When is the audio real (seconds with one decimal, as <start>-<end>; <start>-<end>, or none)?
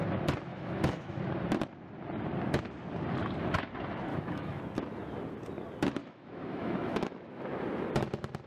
0.0-0.5; 1.2-4.1; 4.6-6.0; 7.4-8.5